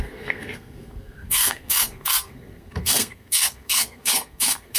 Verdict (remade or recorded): remade